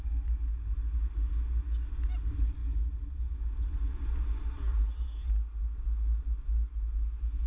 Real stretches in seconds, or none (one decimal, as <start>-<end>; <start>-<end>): 0.0-7.5